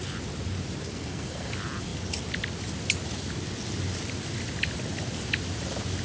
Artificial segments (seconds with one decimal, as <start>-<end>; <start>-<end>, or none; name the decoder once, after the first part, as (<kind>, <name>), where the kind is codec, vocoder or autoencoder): 0.8-1.5 (codec, SNAC)